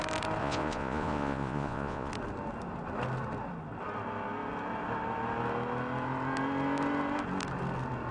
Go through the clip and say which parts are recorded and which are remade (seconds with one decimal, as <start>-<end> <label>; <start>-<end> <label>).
0.0-0.4 recorded; 0.4-2.1 remade; 2.1-8.1 recorded